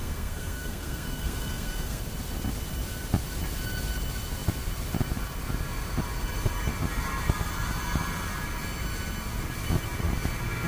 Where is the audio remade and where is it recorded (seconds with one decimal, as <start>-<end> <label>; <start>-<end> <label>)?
0.0-2.0 remade; 2.0-10.7 recorded